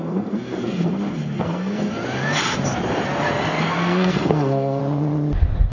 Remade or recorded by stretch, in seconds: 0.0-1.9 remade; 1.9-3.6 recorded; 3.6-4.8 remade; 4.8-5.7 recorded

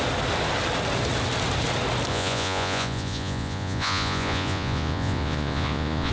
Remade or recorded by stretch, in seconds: 0.0-2.1 recorded; 2.1-6.1 remade

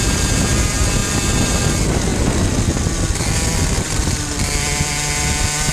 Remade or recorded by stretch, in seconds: 0.0-5.7 recorded